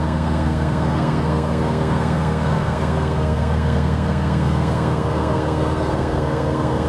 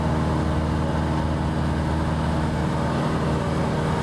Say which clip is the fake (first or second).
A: first